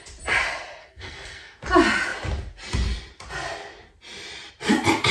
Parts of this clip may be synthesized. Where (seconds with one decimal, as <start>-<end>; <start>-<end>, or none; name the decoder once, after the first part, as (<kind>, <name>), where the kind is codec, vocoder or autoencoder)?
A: 0.8-1.6 (codec, SNAC)